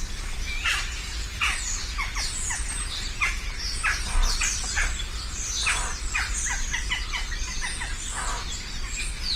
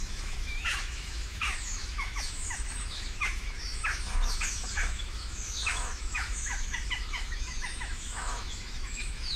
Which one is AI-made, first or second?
second